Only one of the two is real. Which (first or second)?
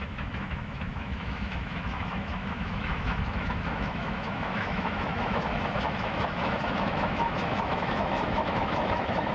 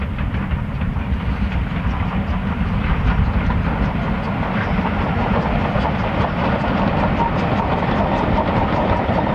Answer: second